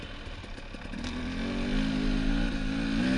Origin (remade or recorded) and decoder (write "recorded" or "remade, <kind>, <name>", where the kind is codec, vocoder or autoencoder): recorded